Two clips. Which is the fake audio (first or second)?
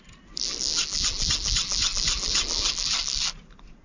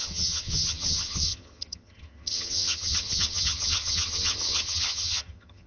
second